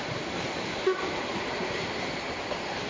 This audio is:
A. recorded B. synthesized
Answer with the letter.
B